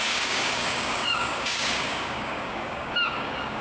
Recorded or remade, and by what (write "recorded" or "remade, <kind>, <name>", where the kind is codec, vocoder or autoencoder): remade, codec, DAC